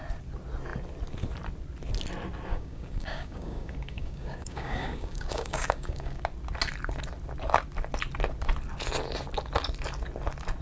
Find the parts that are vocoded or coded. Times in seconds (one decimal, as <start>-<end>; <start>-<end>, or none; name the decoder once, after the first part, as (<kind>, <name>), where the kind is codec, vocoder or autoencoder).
2.5-6.2 (codec, DAC)